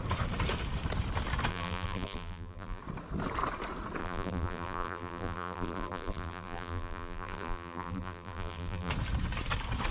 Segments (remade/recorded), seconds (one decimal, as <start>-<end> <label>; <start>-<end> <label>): 0.0-1.5 recorded; 1.5-2.8 remade; 2.8-4.0 recorded; 4.0-8.9 remade; 8.9-9.9 recorded